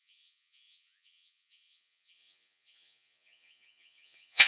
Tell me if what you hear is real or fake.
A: fake